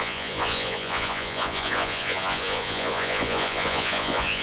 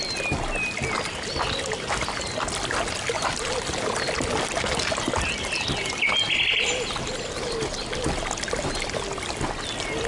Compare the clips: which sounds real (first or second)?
second